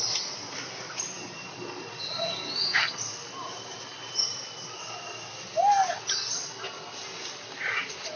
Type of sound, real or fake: real